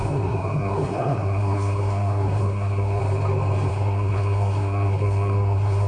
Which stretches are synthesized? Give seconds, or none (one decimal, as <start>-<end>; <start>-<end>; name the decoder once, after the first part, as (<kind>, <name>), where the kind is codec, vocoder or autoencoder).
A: 0.0-3.0 (codec, SNAC); 3.7-5.9